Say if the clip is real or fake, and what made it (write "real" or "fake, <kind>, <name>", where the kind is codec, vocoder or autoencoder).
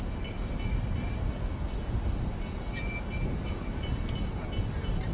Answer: real